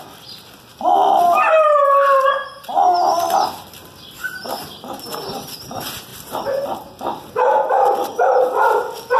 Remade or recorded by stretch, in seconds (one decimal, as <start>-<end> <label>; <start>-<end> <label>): 0.0-0.7 recorded; 0.7-2.2 remade; 2.2-9.2 recorded